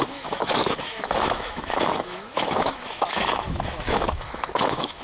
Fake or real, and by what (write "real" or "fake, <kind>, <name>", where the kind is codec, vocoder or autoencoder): fake, autoencoder, DAC-VAE